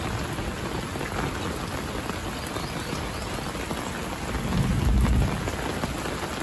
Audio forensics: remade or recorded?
recorded